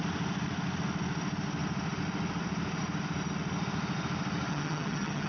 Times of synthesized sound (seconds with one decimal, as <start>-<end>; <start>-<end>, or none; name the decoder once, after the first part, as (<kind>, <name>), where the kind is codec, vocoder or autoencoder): 4.5-5.3 (vocoder, HiFi-GAN)